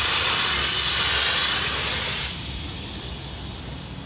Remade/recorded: recorded